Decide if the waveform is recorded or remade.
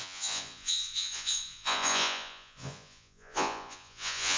remade